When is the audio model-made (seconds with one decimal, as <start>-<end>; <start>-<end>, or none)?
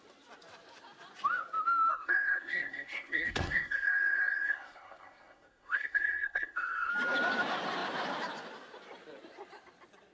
1.9-6.9